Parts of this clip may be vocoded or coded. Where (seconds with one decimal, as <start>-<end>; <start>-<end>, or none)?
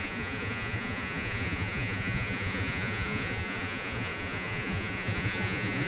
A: 0.0-5.9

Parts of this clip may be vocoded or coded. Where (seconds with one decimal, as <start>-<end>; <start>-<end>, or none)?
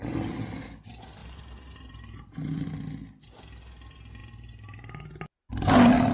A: none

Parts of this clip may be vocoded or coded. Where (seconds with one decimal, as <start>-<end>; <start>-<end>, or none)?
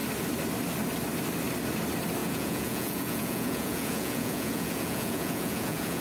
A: 2.2-6.0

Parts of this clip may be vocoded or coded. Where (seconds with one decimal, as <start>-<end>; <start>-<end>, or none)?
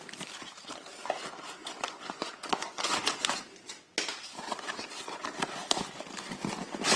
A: 1.6-3.2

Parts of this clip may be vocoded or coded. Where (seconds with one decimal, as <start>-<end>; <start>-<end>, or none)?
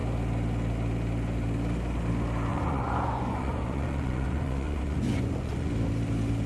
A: 2.5-5.7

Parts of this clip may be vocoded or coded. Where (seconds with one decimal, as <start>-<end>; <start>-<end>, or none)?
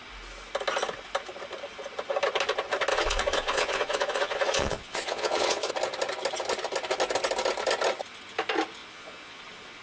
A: 2.9-5.7; 8.8-9.4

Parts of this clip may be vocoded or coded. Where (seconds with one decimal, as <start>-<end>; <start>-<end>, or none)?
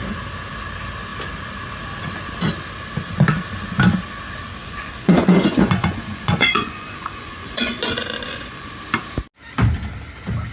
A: 4.6-8.7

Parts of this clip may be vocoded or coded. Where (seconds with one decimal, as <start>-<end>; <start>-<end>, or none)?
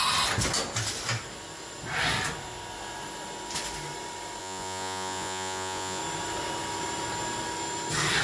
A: 4.4-6.0